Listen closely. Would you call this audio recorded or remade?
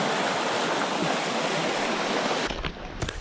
recorded